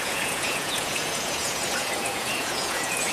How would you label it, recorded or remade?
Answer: remade